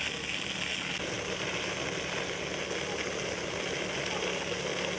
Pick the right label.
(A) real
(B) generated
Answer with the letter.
A